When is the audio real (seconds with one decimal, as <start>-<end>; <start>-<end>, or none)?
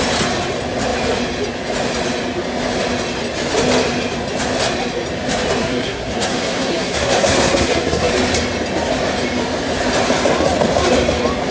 0.0-5.6; 8.1-11.5